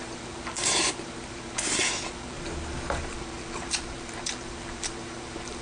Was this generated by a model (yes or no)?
yes